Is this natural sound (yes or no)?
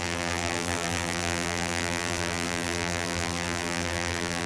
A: no